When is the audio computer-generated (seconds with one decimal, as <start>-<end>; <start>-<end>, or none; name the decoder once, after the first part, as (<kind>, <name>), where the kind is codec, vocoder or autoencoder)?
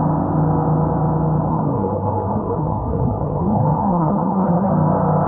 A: 1.5-4.7 (codec, SNAC)